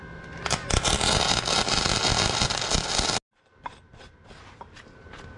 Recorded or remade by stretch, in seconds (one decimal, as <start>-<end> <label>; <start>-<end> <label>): 0.0-5.4 recorded

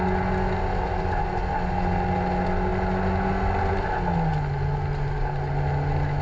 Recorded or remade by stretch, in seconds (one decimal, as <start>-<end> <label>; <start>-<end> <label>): 0.0-6.2 recorded

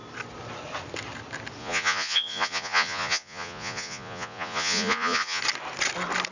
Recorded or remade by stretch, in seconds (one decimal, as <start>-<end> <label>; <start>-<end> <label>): 0.0-1.6 recorded; 1.6-5.4 remade; 5.4-6.3 recorded

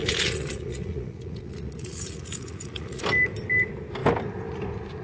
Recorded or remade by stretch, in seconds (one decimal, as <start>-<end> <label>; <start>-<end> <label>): 0.0-3.0 remade; 3.0-5.0 recorded

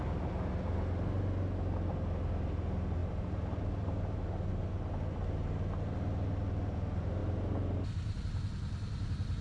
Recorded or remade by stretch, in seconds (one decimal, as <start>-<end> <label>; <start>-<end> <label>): 0.0-9.4 recorded

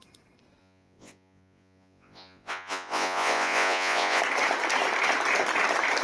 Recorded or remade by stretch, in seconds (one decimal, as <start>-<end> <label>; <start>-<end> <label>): 0.0-0.6 recorded; 0.6-4.2 remade; 4.2-6.0 recorded

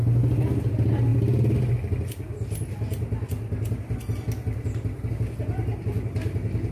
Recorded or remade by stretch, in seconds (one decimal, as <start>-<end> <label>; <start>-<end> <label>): 0.0-6.7 recorded

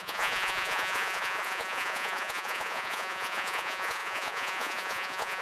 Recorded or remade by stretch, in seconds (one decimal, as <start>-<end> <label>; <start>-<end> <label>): 0.0-5.4 remade